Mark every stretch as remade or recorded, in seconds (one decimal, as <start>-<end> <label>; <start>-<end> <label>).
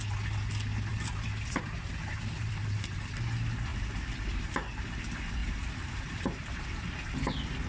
0.0-0.9 recorded; 0.9-3.1 remade; 3.1-3.7 recorded; 3.7-4.4 remade; 4.4-5.4 recorded; 5.4-6.9 remade; 6.9-7.7 recorded